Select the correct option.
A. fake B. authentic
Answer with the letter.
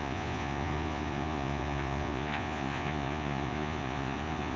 A